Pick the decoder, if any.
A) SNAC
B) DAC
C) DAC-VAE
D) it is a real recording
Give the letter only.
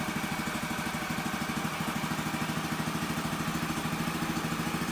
D